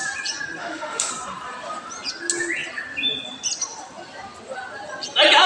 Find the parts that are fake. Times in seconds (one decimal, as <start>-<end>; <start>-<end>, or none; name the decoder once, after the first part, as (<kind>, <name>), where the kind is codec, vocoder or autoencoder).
0.6-1.1 (autoencoder, DAC-VAE)